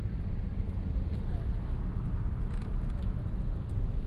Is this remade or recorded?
recorded